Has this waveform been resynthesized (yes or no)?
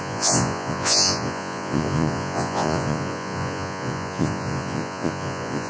yes